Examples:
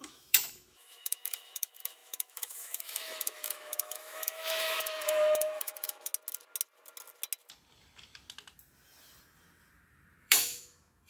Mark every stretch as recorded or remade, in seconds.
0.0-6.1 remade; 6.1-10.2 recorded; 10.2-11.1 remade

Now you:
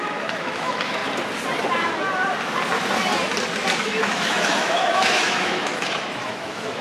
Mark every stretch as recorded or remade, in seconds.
0.0-1.0 remade; 1.0-3.8 recorded; 3.8-6.8 remade

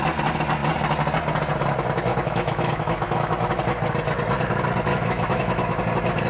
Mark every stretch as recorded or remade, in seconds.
0.0-2.1 recorded; 2.1-3.5 remade; 3.5-4.9 recorded; 4.9-5.8 remade; 5.8-6.3 recorded

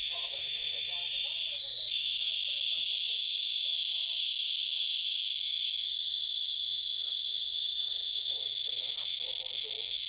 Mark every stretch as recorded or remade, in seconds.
0.0-0.9 remade; 0.9-1.9 recorded; 1.9-2.3 remade; 2.3-4.2 recorded; 4.2-10.1 remade

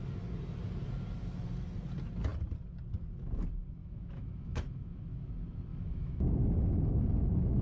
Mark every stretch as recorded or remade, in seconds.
0.0-3.8 recorded; 3.8-5.3 remade; 5.3-5.7 recorded; 5.7-6.2 remade; 6.2-7.6 recorded

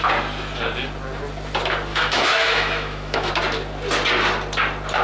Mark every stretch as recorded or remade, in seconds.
0.0-1.9 recorded; 1.9-3.3 remade; 3.3-5.0 recorded